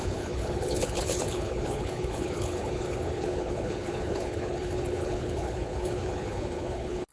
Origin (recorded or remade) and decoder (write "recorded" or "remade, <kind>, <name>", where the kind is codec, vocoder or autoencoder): remade, codec, HILCodec